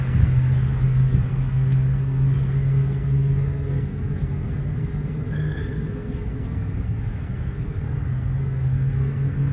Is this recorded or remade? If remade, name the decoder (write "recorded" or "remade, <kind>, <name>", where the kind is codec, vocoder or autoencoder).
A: remade, codec, SNAC